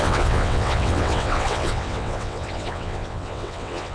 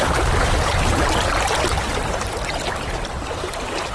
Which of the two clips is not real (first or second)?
first